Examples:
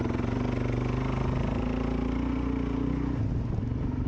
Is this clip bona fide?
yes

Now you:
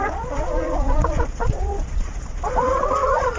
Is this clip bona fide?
no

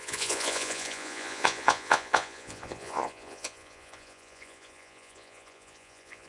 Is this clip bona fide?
no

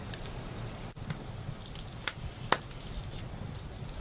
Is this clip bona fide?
yes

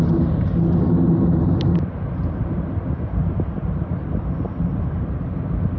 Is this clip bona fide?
yes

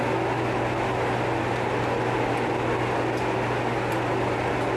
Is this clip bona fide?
yes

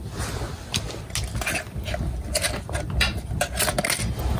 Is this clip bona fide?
yes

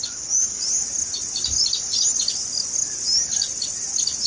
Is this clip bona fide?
yes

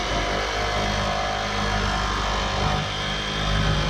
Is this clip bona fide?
yes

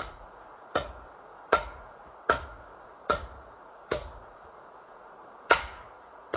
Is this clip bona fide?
no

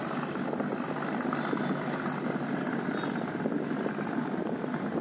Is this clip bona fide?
yes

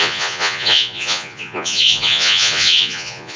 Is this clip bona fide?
no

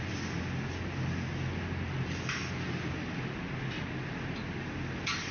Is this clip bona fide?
yes